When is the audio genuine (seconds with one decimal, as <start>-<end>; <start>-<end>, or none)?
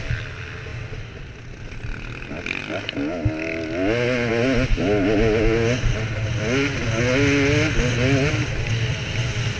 0.0-9.6